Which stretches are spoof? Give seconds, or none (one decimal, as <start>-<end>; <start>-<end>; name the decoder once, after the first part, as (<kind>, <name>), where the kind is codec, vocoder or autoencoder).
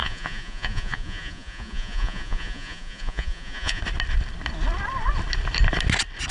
0.0-3.8 (vocoder, Vocos)